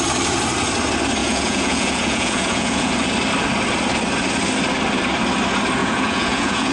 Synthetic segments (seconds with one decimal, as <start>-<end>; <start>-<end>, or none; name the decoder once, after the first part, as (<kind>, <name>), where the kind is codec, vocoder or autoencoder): 1.2-2.9 (vocoder, Vocos); 5.8-6.7